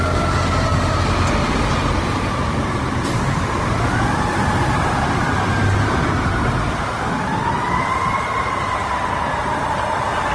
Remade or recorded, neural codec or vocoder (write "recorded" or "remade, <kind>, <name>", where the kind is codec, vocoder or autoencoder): recorded